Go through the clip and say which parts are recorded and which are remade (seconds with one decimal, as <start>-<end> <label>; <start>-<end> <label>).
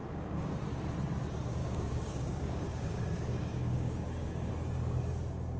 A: 0.0-0.5 remade; 0.5-1.6 recorded; 1.6-4.5 remade; 4.5-5.6 recorded